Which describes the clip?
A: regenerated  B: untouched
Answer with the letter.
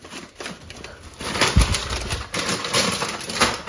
B